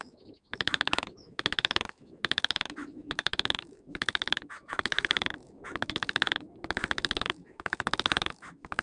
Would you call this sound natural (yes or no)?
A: no